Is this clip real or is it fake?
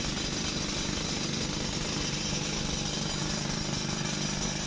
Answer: real